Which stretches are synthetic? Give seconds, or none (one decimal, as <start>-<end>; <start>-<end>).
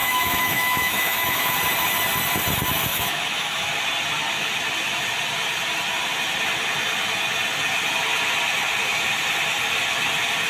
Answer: 0.0-1.5; 2.9-3.7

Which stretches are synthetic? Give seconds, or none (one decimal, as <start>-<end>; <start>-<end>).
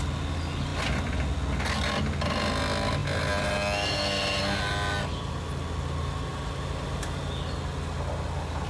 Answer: none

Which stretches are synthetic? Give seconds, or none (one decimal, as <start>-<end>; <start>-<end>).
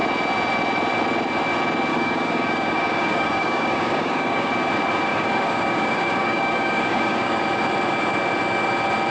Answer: 1.9-4.5; 5.1-7.4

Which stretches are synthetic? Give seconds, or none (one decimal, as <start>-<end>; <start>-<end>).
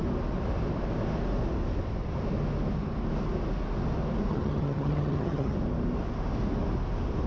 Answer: 4.3-5.6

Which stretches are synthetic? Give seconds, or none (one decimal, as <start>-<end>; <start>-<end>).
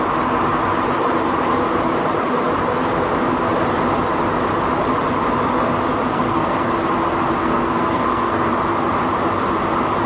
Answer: 6.1-6.7; 7.4-8.5